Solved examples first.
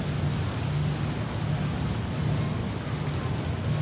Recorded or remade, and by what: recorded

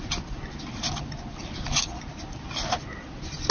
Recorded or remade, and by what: recorded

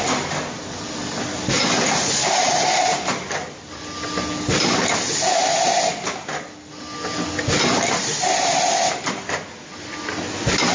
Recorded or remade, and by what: recorded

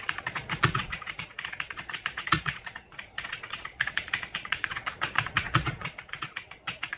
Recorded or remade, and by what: remade, vocoder, Vocos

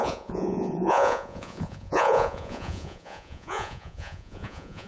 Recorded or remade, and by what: remade, vocoder, Vocos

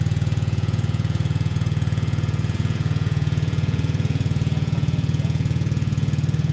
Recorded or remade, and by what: remade, vocoder, Vocos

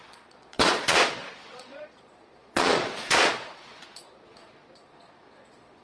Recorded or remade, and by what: remade, vocoder, Vocos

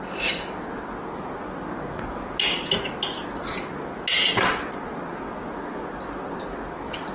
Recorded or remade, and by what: recorded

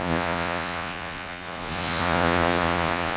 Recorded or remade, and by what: remade, vocoder, Vocos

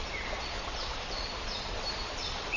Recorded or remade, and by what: recorded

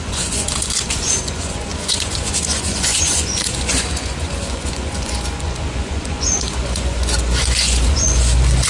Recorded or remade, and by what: remade, vocoder, Vocos